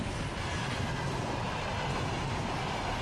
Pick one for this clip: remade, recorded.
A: recorded